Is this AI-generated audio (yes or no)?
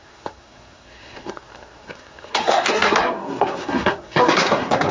yes